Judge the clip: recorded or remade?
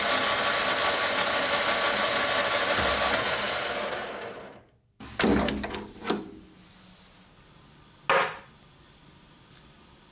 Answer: recorded